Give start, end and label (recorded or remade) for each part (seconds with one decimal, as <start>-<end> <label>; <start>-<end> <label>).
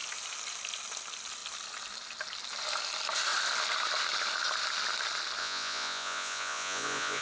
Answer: 0.0-5.4 recorded; 5.4-7.2 remade